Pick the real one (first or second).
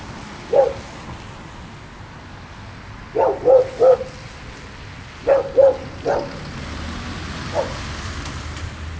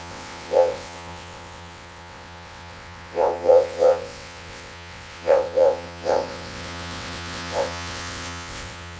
first